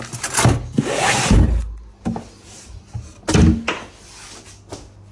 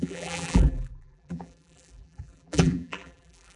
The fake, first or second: second